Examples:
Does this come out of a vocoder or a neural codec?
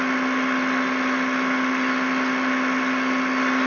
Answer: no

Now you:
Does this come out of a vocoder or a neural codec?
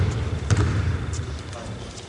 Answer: yes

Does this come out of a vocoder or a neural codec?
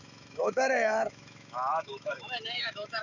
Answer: yes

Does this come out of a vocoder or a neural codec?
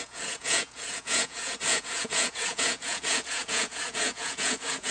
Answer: yes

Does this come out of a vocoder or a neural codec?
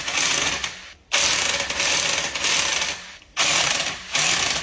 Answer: no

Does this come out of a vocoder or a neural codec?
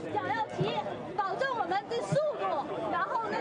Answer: no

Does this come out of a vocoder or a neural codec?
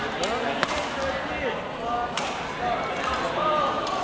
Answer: no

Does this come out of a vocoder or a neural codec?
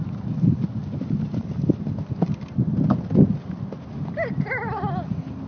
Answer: no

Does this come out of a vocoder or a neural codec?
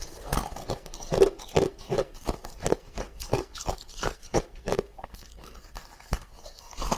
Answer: yes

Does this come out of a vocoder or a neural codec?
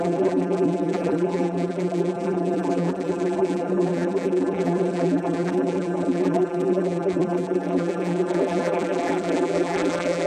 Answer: yes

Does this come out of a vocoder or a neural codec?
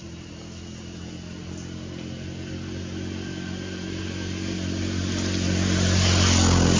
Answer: no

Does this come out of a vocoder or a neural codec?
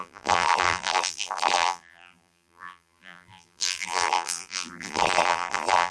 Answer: yes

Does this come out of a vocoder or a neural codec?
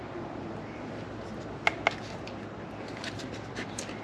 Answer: no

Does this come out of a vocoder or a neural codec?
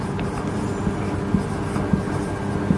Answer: no